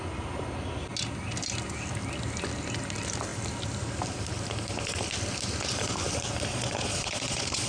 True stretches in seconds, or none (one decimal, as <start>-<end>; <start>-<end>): 0.0-6.5